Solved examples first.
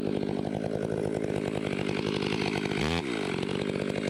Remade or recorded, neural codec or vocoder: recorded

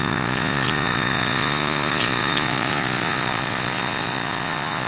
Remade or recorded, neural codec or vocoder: remade, vocoder, Vocos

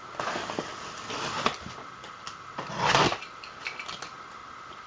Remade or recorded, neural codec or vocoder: recorded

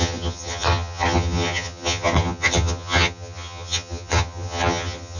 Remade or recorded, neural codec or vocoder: remade, vocoder, HiFi-GAN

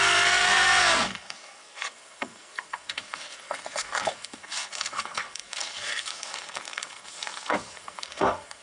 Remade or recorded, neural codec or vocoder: remade, codec, SNAC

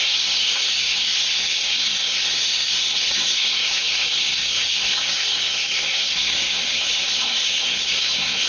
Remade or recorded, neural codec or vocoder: remade, codec, SNAC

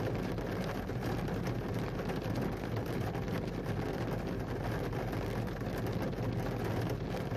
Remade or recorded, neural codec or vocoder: recorded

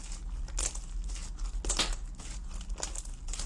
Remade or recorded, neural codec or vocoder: recorded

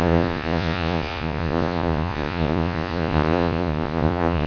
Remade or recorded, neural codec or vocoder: remade, vocoder, Vocos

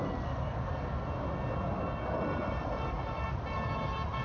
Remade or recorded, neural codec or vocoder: recorded